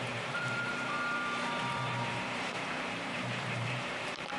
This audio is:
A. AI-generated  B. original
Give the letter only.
A